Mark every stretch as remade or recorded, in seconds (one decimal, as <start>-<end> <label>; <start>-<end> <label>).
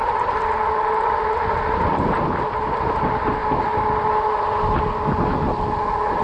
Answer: 0.0-6.2 recorded